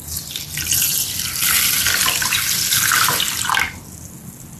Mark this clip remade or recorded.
recorded